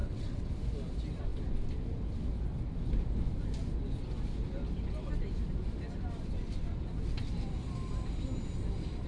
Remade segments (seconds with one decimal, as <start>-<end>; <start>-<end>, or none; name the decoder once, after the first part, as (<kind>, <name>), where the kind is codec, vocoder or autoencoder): 0.0-0.5 (vocoder, WaveNeXt)